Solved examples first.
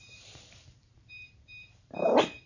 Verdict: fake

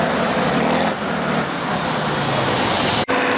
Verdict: real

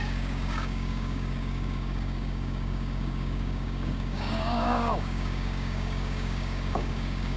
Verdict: fake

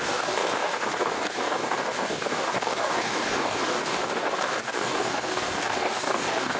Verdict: fake